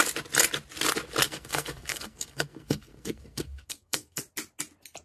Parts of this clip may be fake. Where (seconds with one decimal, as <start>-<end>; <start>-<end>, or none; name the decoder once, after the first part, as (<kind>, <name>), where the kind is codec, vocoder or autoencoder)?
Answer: 1.2-4.2 (codec, SNAC)